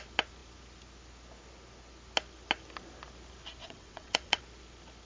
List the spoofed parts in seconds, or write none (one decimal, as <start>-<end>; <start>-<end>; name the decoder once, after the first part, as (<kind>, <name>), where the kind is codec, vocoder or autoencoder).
3.6-4.4 (vocoder, WaveNeXt)